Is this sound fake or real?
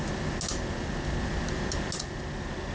real